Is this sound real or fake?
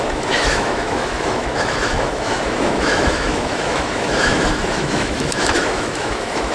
fake